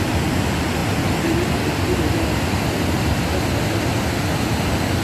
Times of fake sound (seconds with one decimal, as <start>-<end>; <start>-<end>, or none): none